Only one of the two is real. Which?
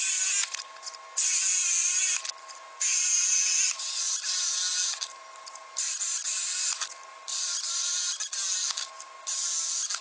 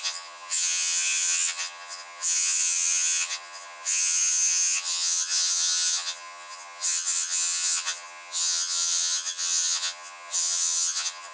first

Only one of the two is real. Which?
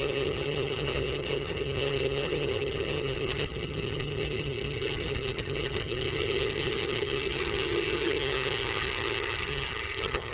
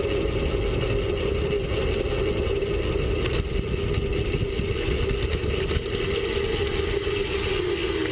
second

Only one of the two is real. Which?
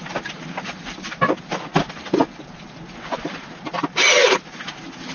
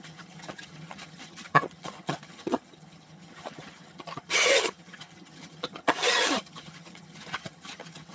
first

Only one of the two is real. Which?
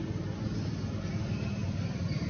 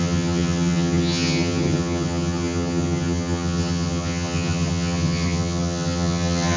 first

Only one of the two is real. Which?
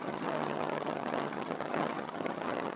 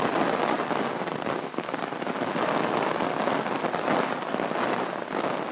second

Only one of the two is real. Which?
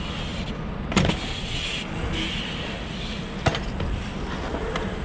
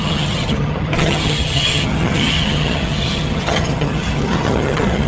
first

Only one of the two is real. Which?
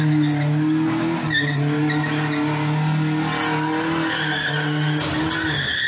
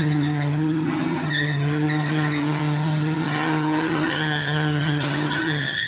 first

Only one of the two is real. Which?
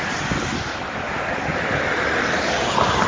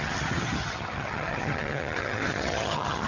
first